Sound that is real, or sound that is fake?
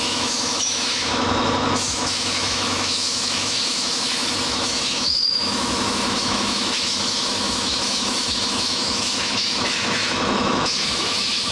fake